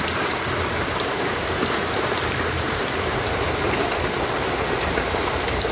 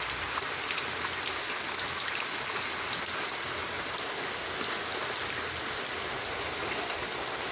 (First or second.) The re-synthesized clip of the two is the first